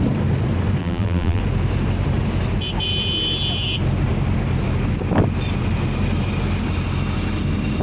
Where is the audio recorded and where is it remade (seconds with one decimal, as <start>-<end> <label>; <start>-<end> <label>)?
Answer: 0.0-0.8 recorded; 0.8-1.4 remade; 1.4-7.8 recorded